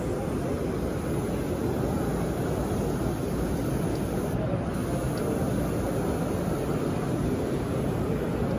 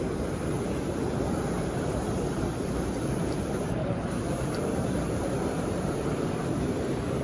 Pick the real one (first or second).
first